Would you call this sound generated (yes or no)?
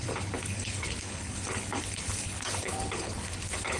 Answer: yes